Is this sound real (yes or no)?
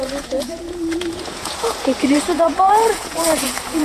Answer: no